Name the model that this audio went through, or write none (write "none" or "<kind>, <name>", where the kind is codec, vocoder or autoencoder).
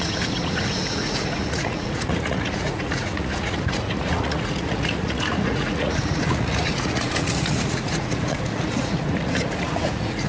vocoder, Vocos